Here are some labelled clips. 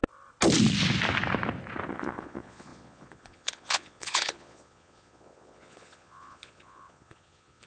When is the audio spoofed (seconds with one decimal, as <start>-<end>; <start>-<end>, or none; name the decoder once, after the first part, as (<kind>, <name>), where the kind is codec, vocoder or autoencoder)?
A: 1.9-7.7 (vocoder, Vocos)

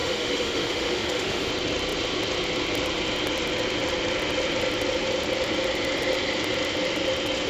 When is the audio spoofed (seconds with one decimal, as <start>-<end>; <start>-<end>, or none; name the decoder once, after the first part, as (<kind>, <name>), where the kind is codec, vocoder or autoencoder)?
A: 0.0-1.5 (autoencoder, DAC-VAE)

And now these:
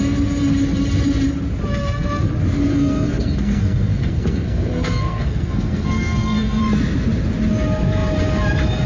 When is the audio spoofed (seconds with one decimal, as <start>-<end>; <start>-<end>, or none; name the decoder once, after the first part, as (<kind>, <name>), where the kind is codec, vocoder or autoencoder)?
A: 1.8-2.3 (codec, SNAC); 2.7-6.6

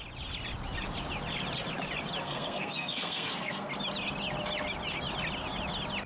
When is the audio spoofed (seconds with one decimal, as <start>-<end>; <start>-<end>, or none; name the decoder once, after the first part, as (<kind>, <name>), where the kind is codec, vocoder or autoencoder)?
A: 2.2-3.7 (codec, SNAC)